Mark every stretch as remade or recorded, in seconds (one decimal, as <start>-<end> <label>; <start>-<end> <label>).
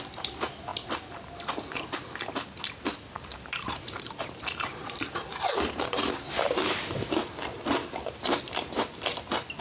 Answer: 0.0-0.7 recorded; 0.7-1.3 remade; 1.3-3.3 recorded; 3.3-6.9 remade; 6.9-7.8 recorded; 7.8-8.4 remade; 8.4-9.6 recorded